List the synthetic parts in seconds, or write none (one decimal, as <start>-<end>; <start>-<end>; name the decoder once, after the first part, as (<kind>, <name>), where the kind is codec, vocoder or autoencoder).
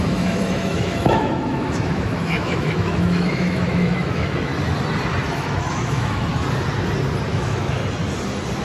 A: 0.0-4.5 (autoencoder, DAC-VAE); 5.3-6.3; 7.3-7.8